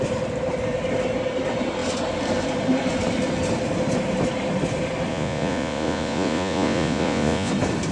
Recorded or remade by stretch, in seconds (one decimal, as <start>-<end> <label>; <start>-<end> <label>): 0.0-5.1 recorded; 5.1-7.5 remade; 7.5-7.9 recorded